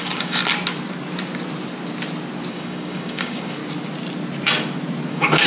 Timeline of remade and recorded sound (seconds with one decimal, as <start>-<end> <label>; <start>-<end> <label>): 0.0-0.4 remade; 0.4-2.5 recorded; 2.5-3.6 remade; 3.6-5.1 recorded; 5.1-5.5 remade